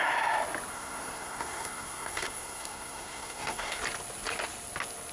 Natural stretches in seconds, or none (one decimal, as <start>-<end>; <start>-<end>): 0.0-0.7; 3.8-5.1